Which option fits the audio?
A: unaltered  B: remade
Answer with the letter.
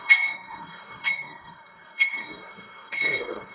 B